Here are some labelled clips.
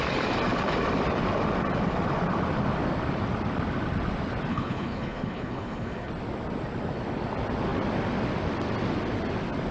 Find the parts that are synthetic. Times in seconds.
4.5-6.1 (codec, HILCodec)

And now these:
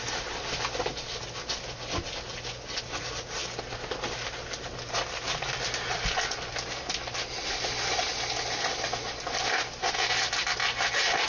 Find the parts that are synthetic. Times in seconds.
none

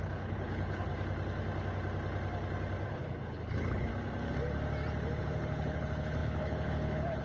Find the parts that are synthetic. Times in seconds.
0.0-0.9 (codec, HILCodec); 2.9-3.9; 5.2-7.2

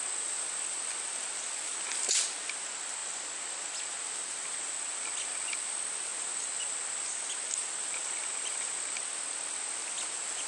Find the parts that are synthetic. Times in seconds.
none

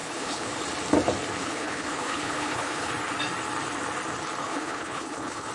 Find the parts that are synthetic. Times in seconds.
0.0-0.6 (codec, HILCodec); 1.4-2.9; 4.4-5.5

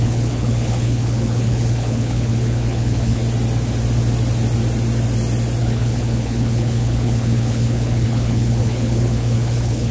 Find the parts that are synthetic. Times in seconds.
0.0-3.2 (codec, HILCodec); 5.6-9.9